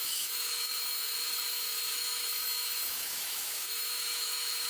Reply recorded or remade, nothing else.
remade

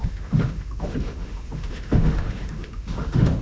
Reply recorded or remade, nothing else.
remade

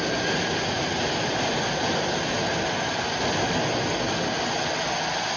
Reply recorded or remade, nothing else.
recorded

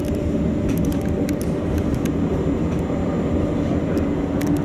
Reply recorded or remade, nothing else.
recorded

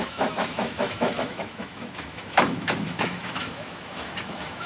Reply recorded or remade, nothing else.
remade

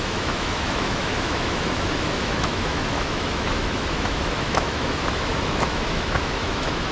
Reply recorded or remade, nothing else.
remade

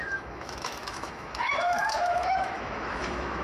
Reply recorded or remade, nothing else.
remade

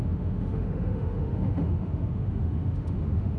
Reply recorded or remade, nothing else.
remade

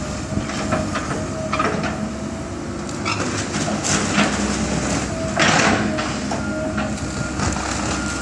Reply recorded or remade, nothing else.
recorded